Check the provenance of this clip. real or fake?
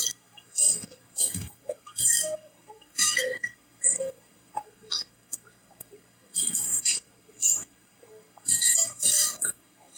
fake